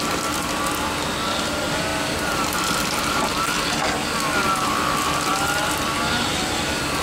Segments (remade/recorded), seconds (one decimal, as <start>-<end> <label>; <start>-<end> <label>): 0.0-1.9 recorded; 1.9-3.0 remade; 3.0-5.3 recorded; 5.3-7.0 remade